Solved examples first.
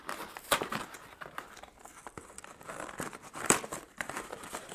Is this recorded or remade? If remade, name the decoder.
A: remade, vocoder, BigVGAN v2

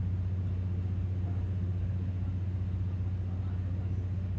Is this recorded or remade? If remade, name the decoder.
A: recorded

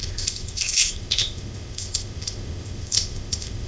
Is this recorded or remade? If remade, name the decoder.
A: remade, codec, ZipCodec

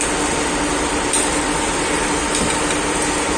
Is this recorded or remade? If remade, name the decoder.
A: recorded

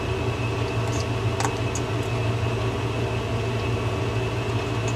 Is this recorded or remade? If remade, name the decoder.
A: recorded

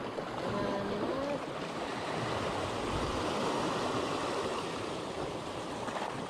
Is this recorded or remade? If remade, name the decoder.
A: recorded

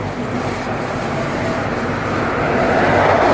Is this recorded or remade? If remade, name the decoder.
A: remade, vocoder, BigVGAN v2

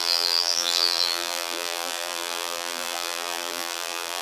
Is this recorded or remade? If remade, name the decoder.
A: remade, vocoder, BigVGAN v2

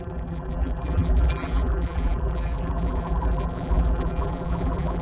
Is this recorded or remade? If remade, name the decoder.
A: remade, vocoder, BigVGAN v2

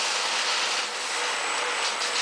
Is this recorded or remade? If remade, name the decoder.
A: recorded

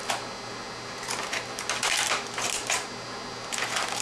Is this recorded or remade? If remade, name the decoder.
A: recorded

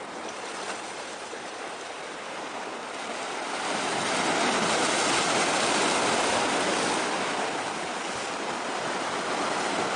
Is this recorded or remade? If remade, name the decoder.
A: recorded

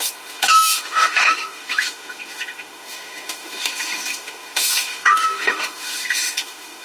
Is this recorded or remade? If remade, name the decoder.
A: remade, autoencoder, DAC-VAE